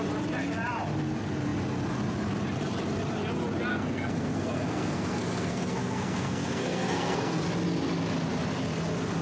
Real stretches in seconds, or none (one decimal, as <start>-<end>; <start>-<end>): 0.0-3.7; 7.4-9.2